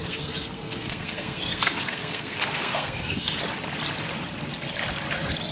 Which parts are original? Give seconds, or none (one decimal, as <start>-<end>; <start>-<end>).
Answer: 3.3-5.5